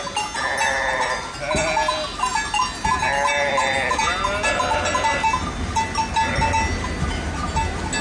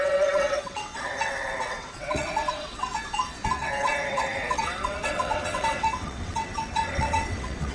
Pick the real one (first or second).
first